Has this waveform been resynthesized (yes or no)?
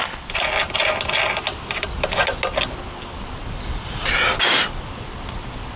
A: no